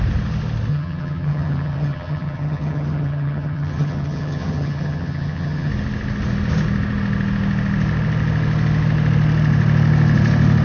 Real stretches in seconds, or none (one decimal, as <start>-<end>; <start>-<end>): 0.0-0.7; 5.7-10.6